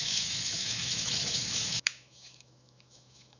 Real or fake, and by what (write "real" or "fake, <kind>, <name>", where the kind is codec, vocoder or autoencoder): fake, autoencoder, DAC-VAE